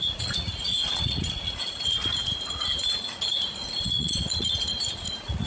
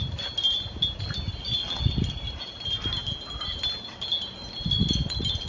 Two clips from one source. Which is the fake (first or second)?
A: first